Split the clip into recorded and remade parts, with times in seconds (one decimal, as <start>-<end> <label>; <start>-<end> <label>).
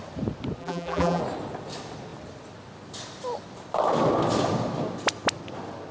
0.0-0.6 recorded; 0.6-1.2 remade; 1.2-5.9 recorded